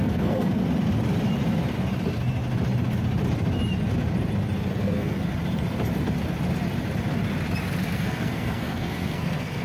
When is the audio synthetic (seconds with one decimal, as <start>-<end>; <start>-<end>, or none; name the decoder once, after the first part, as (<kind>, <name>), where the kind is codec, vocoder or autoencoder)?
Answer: 0.0-0.6 (codec, SNAC); 4.8-5.2; 7.8-9.6